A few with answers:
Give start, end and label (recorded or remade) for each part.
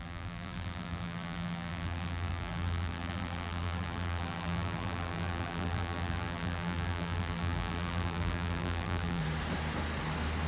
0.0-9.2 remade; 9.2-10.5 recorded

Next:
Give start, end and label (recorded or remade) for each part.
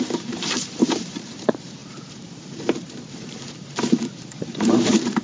0.0-5.2 remade